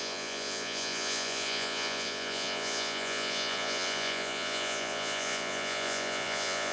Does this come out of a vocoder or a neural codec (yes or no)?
yes